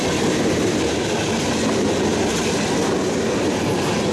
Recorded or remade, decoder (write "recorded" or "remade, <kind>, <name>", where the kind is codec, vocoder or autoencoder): recorded